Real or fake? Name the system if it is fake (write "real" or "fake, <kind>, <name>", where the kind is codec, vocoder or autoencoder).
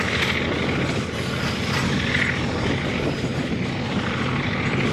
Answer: real